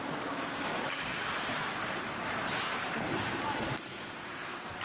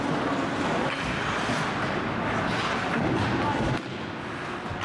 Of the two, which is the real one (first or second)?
second